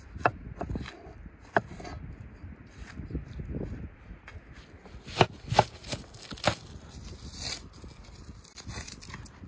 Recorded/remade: recorded